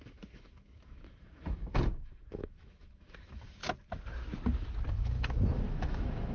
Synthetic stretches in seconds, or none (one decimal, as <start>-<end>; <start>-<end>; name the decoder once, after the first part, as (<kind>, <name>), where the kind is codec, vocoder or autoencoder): 0.0-3.6 (autoencoder, DAC-VAE); 4.9-6.3